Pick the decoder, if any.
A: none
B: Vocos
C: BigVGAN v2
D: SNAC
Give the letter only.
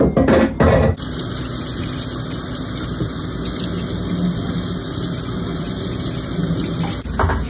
A